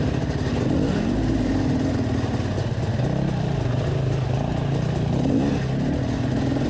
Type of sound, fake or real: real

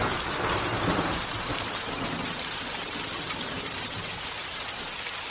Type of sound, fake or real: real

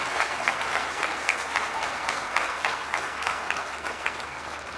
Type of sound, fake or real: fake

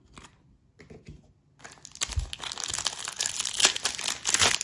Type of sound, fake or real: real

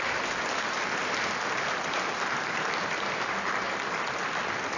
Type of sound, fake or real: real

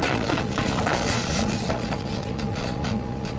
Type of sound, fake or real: fake